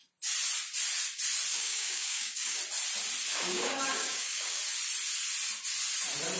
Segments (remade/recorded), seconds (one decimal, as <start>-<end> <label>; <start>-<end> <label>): 0.0-1.5 recorded; 1.5-2.6 remade; 2.6-3.3 recorded; 3.3-4.6 remade; 4.6-6.4 recorded